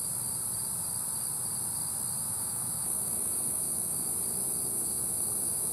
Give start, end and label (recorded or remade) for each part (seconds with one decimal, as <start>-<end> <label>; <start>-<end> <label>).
0.0-2.2 recorded; 2.2-4.1 remade; 4.1-4.7 recorded; 4.7-5.7 remade